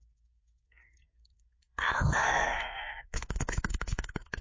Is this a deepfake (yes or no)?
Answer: yes